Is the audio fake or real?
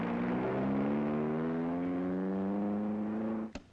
real